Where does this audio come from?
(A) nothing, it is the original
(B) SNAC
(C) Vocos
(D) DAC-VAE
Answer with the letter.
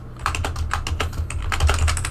A